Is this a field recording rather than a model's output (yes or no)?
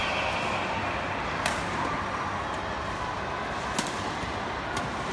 yes